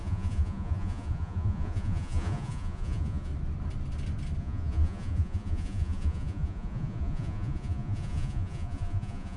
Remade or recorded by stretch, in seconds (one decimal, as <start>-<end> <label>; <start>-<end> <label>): 0.0-3.3 remade; 3.3-4.4 recorded; 4.4-9.4 remade